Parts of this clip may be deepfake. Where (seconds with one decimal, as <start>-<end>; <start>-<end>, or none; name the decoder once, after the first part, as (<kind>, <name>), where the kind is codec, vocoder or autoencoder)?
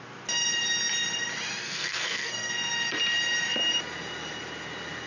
1.6-2.5 (codec, SNAC)